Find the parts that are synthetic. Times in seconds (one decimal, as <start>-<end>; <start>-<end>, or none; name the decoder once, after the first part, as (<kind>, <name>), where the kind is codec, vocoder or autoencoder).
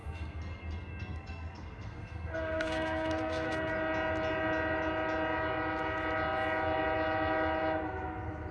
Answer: 0.0-3.7 (codec, SNAC)